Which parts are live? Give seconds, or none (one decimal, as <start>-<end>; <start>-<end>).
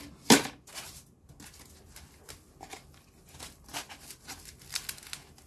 0.0-5.5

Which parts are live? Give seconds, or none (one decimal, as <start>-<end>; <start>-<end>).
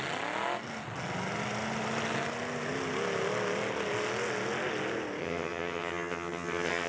0.0-5.2